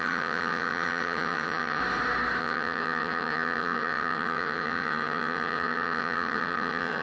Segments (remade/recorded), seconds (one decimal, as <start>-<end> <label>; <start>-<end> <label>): 0.0-1.8 remade; 1.8-2.4 recorded; 2.4-7.0 remade